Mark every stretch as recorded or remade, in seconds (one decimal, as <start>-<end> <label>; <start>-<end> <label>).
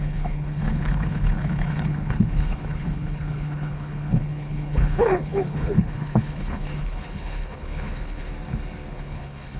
0.0-8.3 remade; 8.3-8.9 recorded; 8.9-9.6 remade